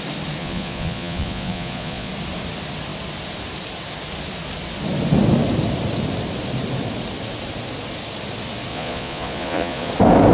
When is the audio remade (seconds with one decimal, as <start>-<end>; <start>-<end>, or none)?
0.4-2.1; 8.7-9.9